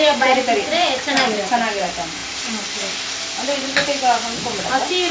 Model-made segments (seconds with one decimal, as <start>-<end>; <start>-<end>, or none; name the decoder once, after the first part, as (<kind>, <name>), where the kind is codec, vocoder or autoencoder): none

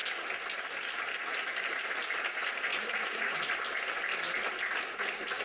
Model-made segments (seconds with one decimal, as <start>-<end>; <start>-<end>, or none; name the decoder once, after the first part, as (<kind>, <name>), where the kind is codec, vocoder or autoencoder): 2.7-3.5 (vocoder, Vocos)

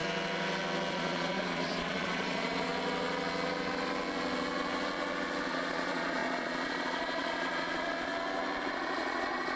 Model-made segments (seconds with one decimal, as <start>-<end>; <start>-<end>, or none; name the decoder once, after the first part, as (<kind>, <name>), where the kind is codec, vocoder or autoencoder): 0.9-2.7 (vocoder, Vocos); 5.5-8.1; 8.7-9.6

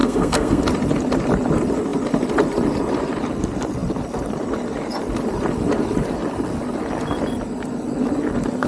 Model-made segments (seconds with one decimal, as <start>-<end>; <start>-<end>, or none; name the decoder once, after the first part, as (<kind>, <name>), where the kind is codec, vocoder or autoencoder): 0.0-0.6 (codec, SNAC)

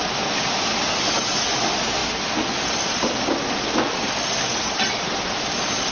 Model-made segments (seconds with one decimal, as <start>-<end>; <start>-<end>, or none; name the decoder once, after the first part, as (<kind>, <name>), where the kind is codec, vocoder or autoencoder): none

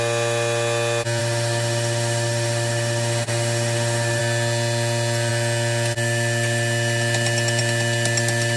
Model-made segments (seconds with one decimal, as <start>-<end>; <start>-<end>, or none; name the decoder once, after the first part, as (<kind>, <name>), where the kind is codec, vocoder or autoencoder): 1.2-4.2 (autoencoder, DAC-VAE)